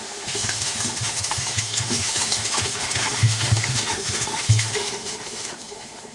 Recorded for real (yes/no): no